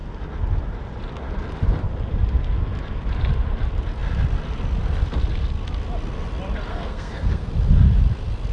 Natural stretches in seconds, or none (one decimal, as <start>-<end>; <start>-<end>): 0.0-6.7; 7.5-8.5